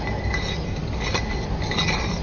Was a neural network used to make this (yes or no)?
no